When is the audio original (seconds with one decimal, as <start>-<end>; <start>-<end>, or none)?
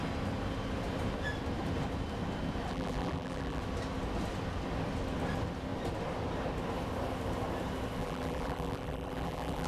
0.0-2.7; 3.6-8.0